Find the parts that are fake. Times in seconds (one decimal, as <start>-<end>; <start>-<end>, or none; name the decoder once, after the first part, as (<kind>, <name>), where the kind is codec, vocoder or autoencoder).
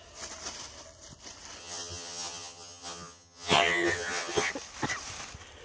1.6-4.5 (vocoder, HiFi-GAN)